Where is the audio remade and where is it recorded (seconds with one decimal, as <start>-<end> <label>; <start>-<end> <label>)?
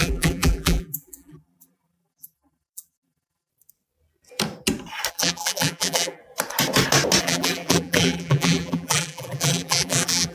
0.0-3.5 remade; 3.5-5.1 recorded; 5.1-6.2 remade; 6.2-7.2 recorded; 7.2-10.3 remade